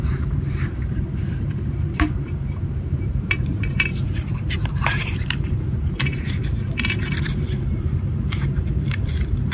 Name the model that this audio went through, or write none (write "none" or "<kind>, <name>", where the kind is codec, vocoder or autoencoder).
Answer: vocoder, BigVGAN v2